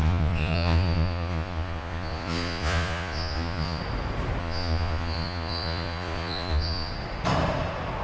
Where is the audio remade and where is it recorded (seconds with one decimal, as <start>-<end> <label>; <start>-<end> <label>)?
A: 0.0-3.8 remade; 3.8-4.4 recorded; 4.4-6.9 remade; 6.9-8.0 recorded